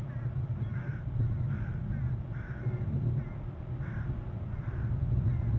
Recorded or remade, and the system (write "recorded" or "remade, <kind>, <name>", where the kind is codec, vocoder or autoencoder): recorded